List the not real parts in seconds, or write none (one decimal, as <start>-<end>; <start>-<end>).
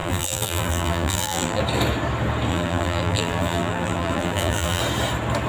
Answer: 0.0-1.6; 2.5-4.8